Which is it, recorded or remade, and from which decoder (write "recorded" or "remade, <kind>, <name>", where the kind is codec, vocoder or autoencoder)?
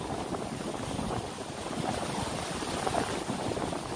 recorded